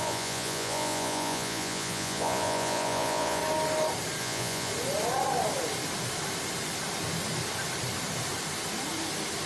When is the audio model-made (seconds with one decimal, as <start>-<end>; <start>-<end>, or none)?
0.0-3.4; 4.2-4.7